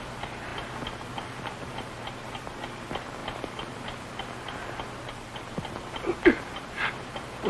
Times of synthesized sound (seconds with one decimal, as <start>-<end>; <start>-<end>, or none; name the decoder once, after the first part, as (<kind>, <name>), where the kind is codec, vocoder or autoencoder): none